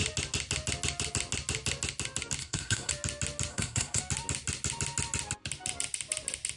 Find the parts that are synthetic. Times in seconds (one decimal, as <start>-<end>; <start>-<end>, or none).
2.4-2.9; 3.5-4.0